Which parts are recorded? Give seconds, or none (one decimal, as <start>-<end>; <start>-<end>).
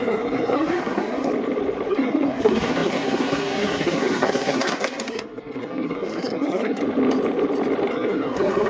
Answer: 1.3-1.9; 6.8-7.9